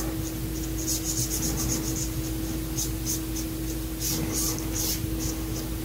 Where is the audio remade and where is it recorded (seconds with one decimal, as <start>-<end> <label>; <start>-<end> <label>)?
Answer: 0.0-1.9 recorded; 1.9-4.8 remade; 4.8-5.8 recorded